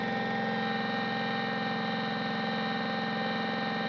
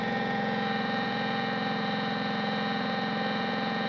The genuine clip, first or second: first